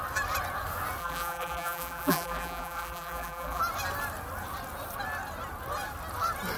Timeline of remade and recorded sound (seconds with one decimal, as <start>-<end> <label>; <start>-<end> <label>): 0.0-1.0 recorded; 1.0-3.6 remade; 3.6-6.6 recorded